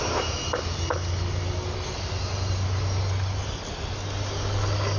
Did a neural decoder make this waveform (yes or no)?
no